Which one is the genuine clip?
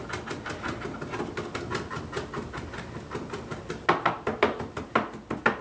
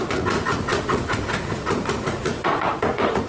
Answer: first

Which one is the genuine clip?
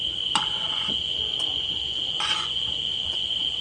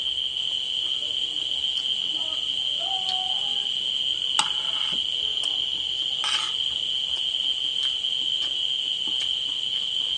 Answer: second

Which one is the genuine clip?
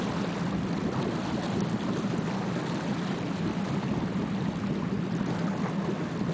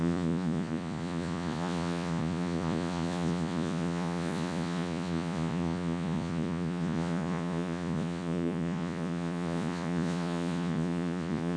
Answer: first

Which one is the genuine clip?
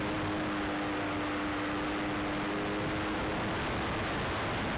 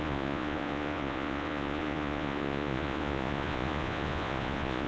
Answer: first